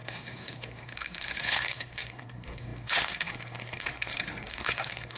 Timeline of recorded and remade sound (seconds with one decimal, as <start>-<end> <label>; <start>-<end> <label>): 0.0-5.2 remade